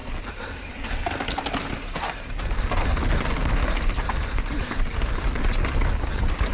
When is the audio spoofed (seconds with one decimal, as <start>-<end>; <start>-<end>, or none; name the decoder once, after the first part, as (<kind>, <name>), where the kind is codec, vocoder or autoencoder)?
4.2-5.0 (vocoder, BigVGAN v2)